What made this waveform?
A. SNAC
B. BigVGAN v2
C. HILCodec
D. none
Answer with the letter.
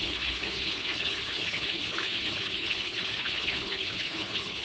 C